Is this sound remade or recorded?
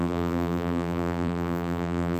remade